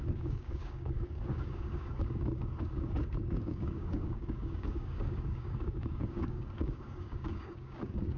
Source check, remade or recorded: remade